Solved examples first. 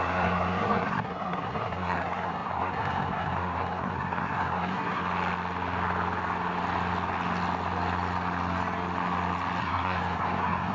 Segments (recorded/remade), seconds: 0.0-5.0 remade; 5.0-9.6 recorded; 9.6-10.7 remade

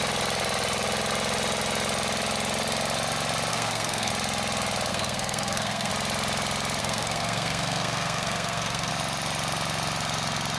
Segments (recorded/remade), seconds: 0.0-3.5 recorded; 3.5-4.1 remade; 4.1-4.9 recorded; 4.9-5.9 remade; 5.9-6.8 recorded; 6.8-8.9 remade; 8.9-10.6 recorded